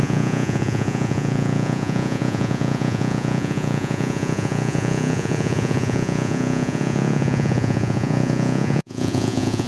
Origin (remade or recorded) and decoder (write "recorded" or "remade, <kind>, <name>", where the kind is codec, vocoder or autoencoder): remade, vocoder, Vocos